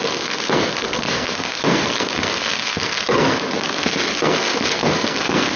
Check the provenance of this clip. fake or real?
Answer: fake